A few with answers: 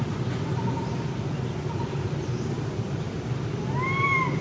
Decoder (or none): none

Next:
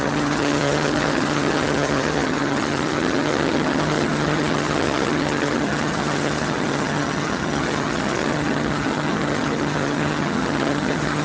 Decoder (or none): vocoder, HiFi-GAN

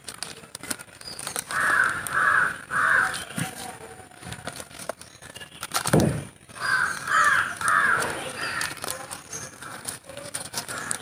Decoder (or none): vocoder, BigVGAN v2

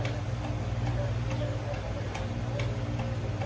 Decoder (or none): none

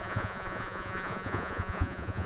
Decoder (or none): vocoder, Vocos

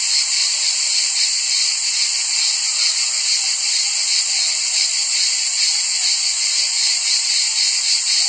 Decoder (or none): none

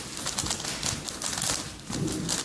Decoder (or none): none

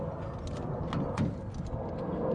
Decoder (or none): none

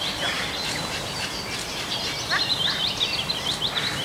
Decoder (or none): none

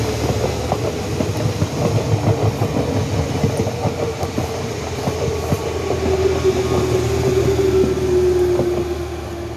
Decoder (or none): none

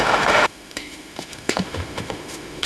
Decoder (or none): autoencoder, DAC-VAE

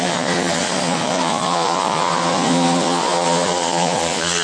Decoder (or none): vocoder, Vocos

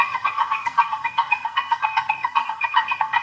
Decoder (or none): codec, SNAC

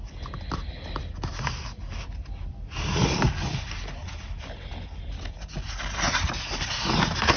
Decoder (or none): none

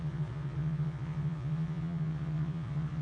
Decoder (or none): vocoder, Vocos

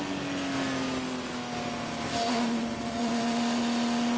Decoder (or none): none